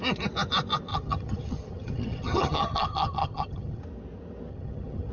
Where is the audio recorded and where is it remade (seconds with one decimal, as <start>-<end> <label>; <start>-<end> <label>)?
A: 0.0-0.9 recorded; 0.9-3.8 remade; 3.8-4.5 recorded; 4.5-5.1 remade